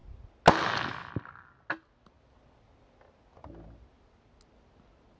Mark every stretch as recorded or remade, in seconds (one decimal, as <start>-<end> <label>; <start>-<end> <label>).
0.0-5.2 recorded